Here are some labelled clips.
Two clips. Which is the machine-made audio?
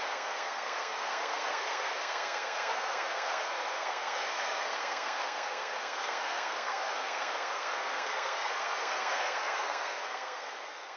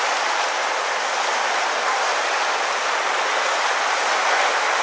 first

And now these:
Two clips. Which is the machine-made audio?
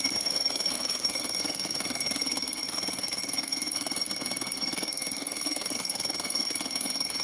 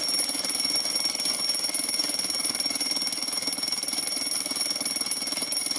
first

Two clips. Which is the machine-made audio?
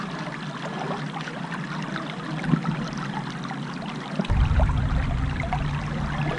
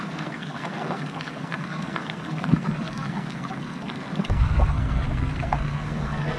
second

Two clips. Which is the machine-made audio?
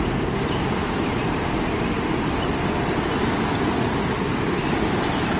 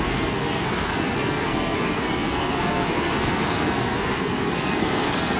second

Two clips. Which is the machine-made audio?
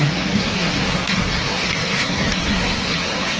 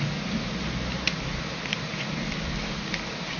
first